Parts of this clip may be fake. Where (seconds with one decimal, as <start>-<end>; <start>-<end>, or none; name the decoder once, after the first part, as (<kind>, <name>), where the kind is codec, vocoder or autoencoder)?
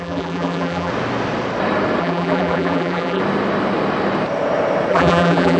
0.0-0.9 (vocoder, BigVGAN v2); 2.0-3.2; 4.9-5.6